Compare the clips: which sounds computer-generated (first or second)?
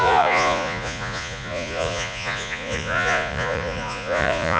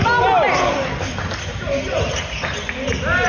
first